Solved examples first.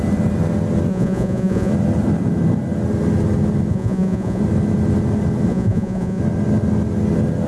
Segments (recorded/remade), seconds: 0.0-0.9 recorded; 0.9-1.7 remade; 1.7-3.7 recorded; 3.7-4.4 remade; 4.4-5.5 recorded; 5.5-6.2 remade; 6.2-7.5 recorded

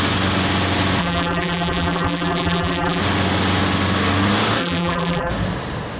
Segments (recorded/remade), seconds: 0.0-1.0 recorded; 1.0-3.0 remade; 3.0-4.6 recorded; 4.6-5.3 remade; 5.3-6.0 recorded

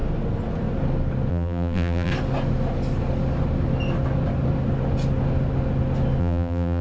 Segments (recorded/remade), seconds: 0.0-1.3 recorded; 1.3-2.1 remade; 2.1-6.2 recorded; 6.2-6.8 remade

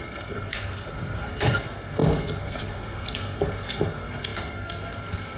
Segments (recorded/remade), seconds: 0.0-5.4 remade